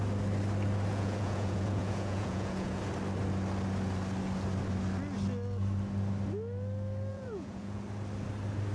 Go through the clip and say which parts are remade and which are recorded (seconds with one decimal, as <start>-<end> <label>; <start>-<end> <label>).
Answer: 0.0-0.9 recorded; 0.9-2.8 remade; 2.8-7.1 recorded; 7.1-7.8 remade; 7.8-8.7 recorded